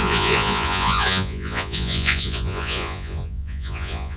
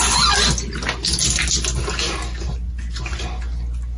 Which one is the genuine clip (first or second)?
second